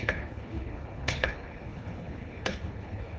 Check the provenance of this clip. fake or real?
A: fake